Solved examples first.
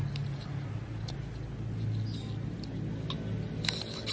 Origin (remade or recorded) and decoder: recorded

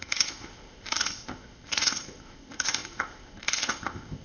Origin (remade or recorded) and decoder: remade, codec, ZipCodec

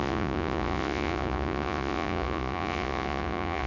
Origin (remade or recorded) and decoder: remade, vocoder, Vocos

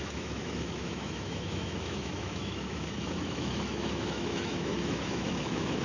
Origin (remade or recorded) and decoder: remade, autoencoder, DAC-VAE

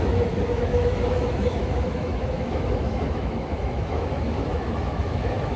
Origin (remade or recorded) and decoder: remade, autoencoder, DAC-VAE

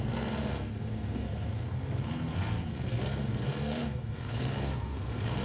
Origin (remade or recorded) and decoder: remade, codec, SNAC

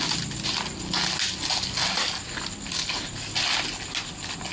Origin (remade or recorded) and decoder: recorded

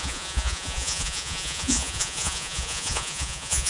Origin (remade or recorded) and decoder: remade, vocoder, Vocos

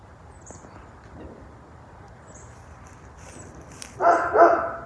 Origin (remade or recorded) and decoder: remade, vocoder, BigVGAN v2